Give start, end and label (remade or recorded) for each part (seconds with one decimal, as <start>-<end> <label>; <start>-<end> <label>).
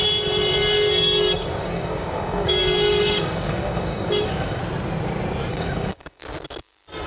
0.0-0.6 recorded; 0.6-4.6 remade; 4.6-5.5 recorded; 5.5-6.2 remade; 6.2-7.1 recorded